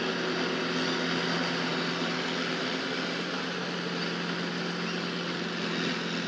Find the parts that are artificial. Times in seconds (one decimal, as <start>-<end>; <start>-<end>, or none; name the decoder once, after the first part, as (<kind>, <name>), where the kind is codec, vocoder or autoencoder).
none